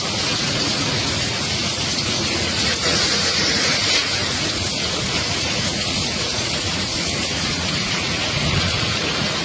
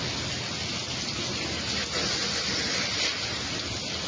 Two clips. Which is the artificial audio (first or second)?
first